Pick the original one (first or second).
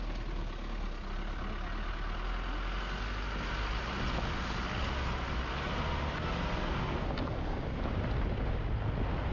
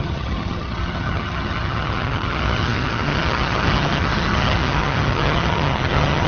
first